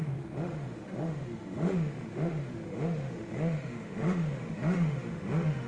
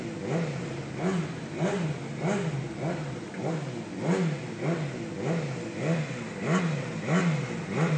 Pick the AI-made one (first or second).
first